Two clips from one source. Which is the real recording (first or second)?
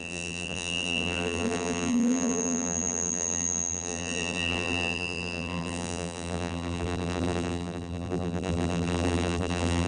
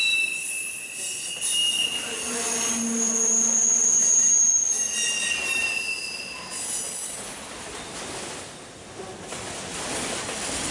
second